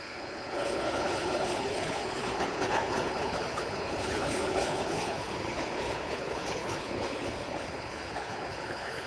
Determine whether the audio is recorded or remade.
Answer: remade